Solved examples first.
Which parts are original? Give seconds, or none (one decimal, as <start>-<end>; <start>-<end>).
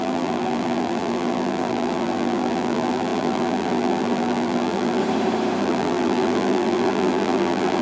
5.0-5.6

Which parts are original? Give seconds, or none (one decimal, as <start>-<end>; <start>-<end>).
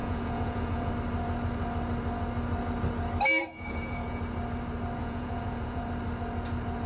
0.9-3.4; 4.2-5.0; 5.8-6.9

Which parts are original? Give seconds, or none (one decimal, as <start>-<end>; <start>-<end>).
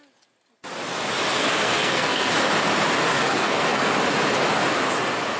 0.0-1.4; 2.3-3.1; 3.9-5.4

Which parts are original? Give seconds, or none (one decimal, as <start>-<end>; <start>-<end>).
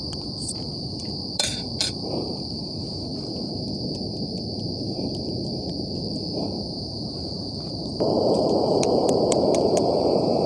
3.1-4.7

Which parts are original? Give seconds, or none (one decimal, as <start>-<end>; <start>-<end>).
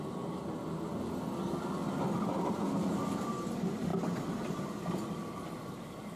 0.0-6.2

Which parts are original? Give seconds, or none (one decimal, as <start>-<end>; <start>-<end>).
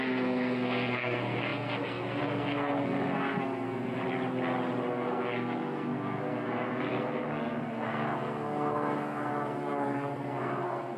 4.0-4.9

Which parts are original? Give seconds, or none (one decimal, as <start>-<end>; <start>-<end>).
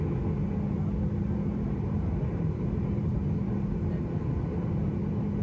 0.0-1.2; 4.0-5.4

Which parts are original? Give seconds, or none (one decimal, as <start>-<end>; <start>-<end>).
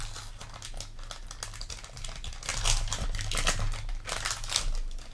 0.0-5.1